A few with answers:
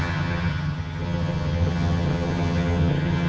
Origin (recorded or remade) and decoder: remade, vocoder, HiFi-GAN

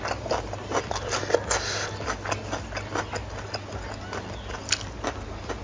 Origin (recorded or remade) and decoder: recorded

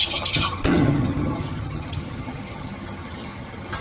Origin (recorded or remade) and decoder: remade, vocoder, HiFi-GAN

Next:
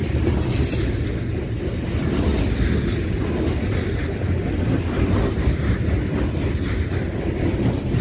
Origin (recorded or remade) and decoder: recorded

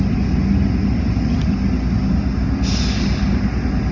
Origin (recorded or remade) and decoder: recorded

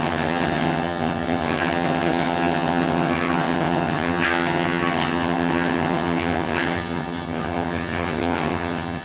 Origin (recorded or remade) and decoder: remade, vocoder, HiFi-GAN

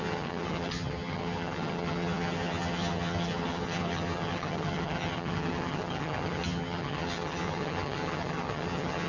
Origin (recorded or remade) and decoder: remade, vocoder, HiFi-GAN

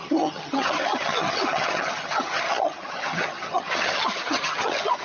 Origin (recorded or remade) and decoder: remade, vocoder, HiFi-GAN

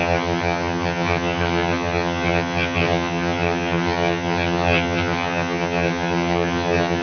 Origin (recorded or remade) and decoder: remade, vocoder, HiFi-GAN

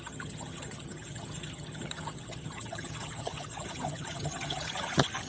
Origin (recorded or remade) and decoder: remade, vocoder, HiFi-GAN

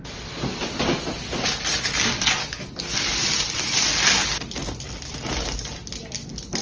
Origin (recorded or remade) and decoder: recorded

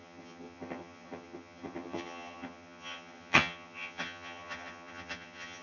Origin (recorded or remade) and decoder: remade, vocoder, HiFi-GAN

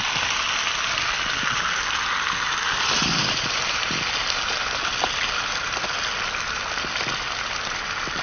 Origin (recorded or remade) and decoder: recorded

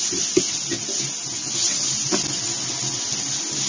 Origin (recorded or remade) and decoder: recorded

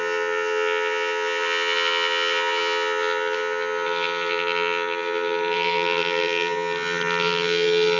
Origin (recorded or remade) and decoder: remade, vocoder, HiFi-GAN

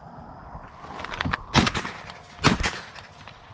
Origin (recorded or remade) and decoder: recorded